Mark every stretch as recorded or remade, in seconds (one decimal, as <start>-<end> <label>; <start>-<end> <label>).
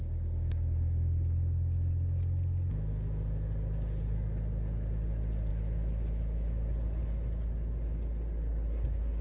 0.0-5.5 recorded; 5.5-7.0 remade; 7.0-9.2 recorded